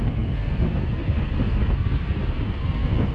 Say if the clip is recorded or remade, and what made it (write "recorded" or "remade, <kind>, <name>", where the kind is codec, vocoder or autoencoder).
remade, codec, SNAC